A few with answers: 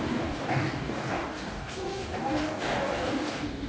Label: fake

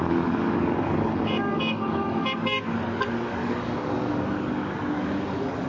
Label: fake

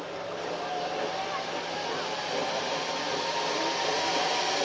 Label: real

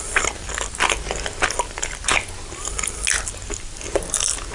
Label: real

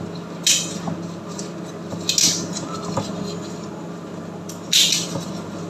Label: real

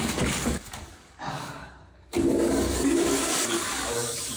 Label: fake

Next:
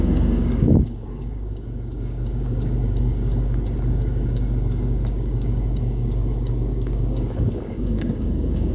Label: fake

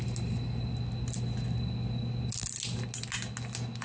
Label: real